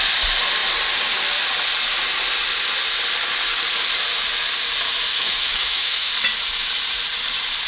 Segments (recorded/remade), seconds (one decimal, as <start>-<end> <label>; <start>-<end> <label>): 0.0-5.1 recorded; 5.1-6.1 remade; 6.1-7.7 recorded

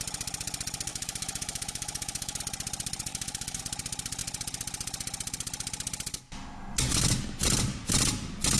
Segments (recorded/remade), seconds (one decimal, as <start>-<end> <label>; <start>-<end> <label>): 0.0-0.9 recorded; 0.9-2.4 remade; 2.4-3.1 recorded; 3.1-3.6 remade; 3.6-8.6 recorded

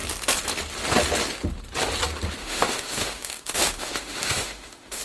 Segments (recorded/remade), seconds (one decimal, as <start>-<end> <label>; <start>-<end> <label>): 0.0-2.4 recorded; 2.4-5.0 remade

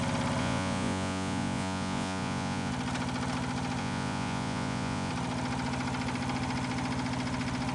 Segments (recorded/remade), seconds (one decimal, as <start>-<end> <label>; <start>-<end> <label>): 0.0-0.4 recorded; 0.4-2.7 remade; 2.7-3.8 recorded; 3.8-5.1 remade; 5.1-7.7 recorded